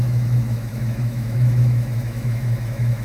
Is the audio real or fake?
fake